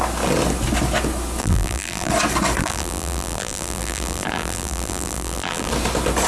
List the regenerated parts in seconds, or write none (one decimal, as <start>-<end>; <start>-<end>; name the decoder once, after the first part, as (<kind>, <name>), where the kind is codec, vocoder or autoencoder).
1.4-2.1 (vocoder, BigVGAN v2); 2.6-5.7